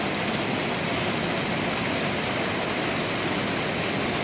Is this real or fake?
real